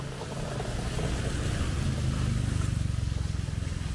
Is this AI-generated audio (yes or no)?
no